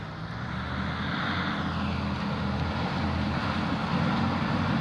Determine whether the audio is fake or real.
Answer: real